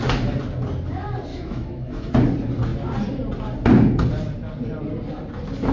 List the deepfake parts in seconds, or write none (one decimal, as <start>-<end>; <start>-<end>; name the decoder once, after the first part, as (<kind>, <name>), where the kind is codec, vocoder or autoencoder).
1.3-2.1 (autoencoder, DAC-VAE)